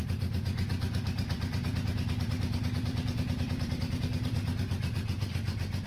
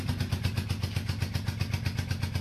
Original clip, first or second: second